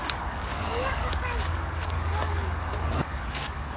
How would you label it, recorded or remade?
remade